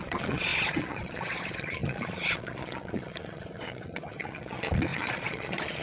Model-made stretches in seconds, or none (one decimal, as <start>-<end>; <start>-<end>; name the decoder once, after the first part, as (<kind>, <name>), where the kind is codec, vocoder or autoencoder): 0.0-5.8 (vocoder, Vocos)